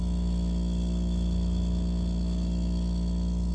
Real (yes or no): yes